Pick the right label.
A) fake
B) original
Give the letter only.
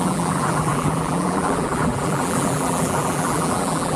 A